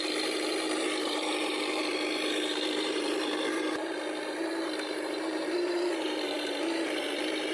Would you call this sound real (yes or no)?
no